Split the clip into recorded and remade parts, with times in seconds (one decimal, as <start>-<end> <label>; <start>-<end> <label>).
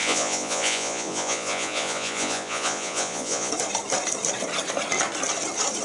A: 0.0-3.5 remade; 3.5-5.8 recorded